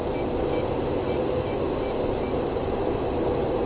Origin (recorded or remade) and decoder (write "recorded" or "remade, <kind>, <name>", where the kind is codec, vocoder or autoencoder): recorded